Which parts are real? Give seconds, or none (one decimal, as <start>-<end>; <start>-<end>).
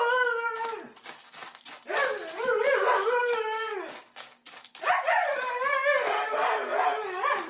0.0-7.5